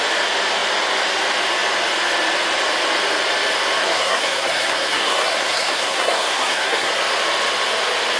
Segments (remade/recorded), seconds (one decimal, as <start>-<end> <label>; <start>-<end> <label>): 0.0-3.8 recorded; 3.8-6.9 remade; 6.9-8.2 recorded